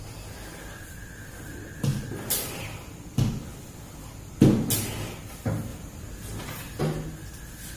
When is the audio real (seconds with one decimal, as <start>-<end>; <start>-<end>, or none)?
0.0-1.9; 2.6-7.8